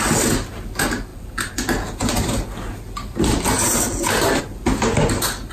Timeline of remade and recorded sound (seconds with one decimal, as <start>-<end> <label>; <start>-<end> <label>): 0.0-5.5 recorded